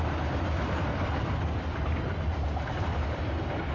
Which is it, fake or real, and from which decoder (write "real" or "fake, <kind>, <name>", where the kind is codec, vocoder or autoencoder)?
fake, vocoder, BigVGAN v2